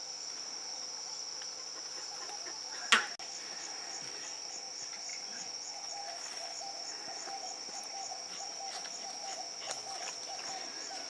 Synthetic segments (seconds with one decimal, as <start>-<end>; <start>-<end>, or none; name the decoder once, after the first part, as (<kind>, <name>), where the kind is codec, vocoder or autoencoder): 5.1-5.9 (vocoder, Vocos)